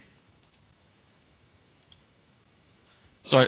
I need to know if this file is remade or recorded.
remade